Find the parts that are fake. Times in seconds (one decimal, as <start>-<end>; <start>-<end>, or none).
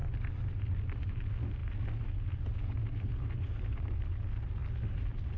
none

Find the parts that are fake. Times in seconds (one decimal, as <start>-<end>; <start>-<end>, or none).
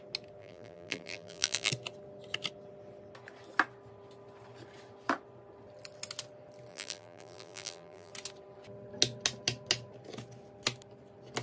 0.4-1.7; 6.7-8.1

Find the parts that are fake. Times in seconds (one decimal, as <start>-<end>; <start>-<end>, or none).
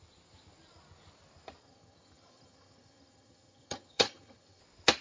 1.6-4.6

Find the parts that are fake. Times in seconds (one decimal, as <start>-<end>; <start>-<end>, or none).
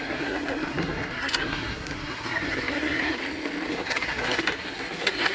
0.0-3.2; 3.7-5.3